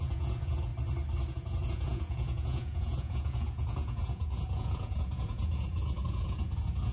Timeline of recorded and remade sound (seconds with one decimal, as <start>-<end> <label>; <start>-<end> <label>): 0.0-0.7 remade; 0.7-1.3 recorded; 1.3-6.9 remade